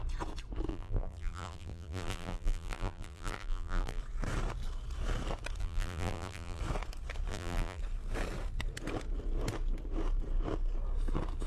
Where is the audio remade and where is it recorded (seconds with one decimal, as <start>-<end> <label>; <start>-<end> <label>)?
0.0-0.7 recorded; 0.7-4.0 remade; 4.0-5.6 recorded; 5.6-6.6 remade; 6.6-7.3 recorded; 7.3-7.8 remade; 7.8-11.5 recorded